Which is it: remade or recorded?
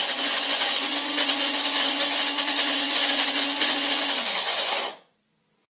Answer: remade